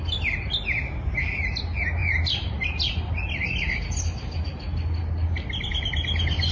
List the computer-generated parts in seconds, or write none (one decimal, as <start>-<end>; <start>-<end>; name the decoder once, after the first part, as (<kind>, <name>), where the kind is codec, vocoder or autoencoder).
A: 2.0-4.0 (vocoder, BigVGAN v2)